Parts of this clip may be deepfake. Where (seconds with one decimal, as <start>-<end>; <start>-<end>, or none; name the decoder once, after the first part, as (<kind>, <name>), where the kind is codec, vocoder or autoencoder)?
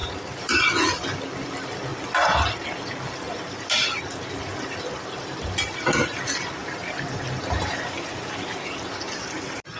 0.0-0.6 (vocoder, BigVGAN v2); 6.6-8.2